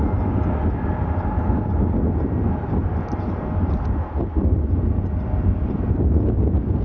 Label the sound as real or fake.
real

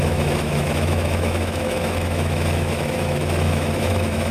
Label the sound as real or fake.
fake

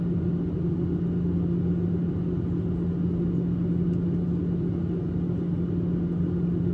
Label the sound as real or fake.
real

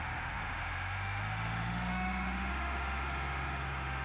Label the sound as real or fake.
fake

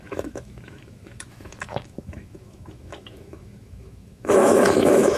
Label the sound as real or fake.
fake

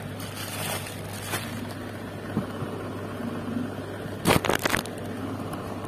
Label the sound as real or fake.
real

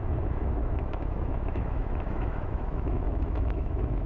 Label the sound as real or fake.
fake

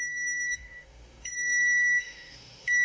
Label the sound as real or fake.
fake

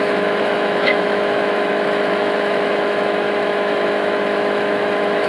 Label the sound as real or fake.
fake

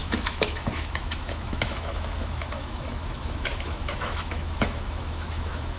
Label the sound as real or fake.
fake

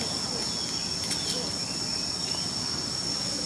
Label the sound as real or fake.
real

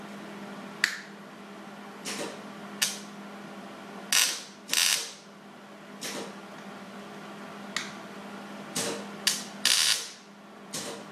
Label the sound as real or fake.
real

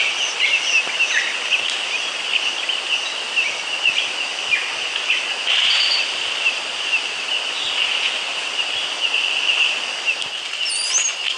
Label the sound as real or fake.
real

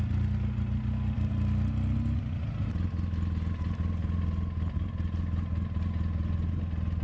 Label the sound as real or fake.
real